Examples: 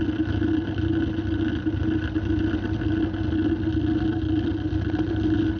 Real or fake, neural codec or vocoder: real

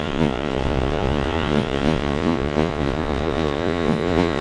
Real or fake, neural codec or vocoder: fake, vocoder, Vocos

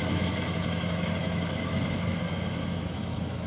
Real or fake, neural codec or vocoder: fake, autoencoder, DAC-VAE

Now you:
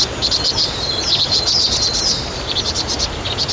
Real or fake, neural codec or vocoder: real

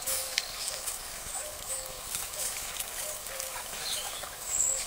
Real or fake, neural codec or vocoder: fake, codec, DAC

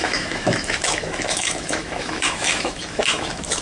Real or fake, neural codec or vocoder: fake, autoencoder, DAC-VAE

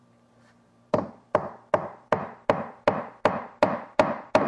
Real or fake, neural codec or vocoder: fake, vocoder, BigVGAN v2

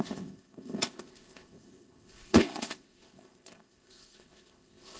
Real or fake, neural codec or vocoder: fake, codec, ZipCodec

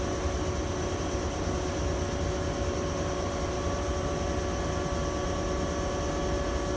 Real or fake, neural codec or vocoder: real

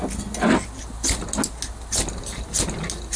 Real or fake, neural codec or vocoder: real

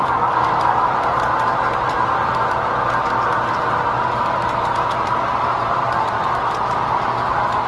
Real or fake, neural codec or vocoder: fake, vocoder, BigVGAN v2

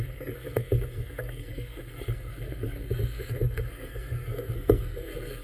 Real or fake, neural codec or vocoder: fake, codec, SNAC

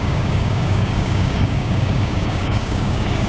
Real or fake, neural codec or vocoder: fake, codec, DAC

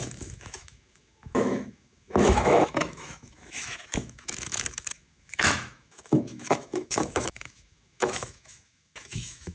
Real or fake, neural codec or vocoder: fake, autoencoder, DAC-VAE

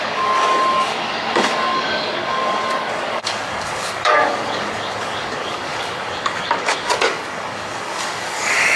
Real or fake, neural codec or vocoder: fake, codec, DAC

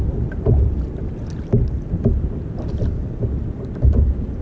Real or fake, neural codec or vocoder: real